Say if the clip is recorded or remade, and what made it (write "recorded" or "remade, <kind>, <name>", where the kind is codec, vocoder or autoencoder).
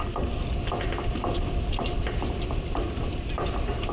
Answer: recorded